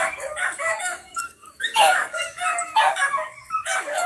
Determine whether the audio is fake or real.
fake